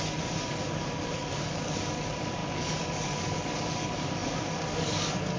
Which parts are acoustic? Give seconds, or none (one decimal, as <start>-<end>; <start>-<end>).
none